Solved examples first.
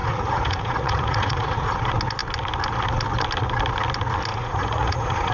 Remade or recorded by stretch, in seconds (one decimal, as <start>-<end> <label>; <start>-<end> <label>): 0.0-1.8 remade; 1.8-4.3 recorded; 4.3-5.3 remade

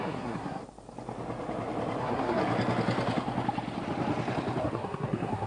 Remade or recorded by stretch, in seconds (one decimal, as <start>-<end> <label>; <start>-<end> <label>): 0.0-0.6 remade; 0.6-2.0 recorded; 2.0-2.4 remade; 2.4-4.6 recorded; 4.6-5.5 remade

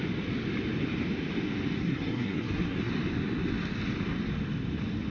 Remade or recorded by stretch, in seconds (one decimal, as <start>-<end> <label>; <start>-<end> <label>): 0.0-1.8 recorded; 1.8-2.9 remade; 2.9-5.1 recorded

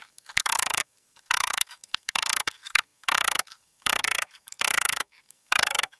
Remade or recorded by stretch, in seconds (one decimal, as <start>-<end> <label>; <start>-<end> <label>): 0.0-6.0 remade

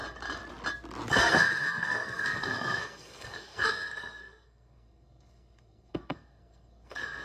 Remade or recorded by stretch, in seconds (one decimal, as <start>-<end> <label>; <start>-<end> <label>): 0.0-1.1 recorded; 1.1-7.2 remade

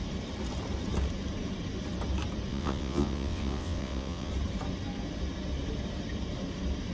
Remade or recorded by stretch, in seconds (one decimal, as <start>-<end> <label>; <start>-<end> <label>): 0.0-2.5 recorded; 2.5-4.3 remade; 4.3-6.9 recorded